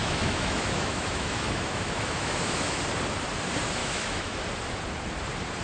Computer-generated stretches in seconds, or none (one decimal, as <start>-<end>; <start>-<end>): 0.0-2.8; 3.8-4.4